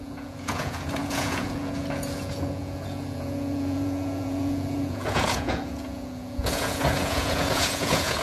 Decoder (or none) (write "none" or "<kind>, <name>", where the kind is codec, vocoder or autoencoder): vocoder, Vocos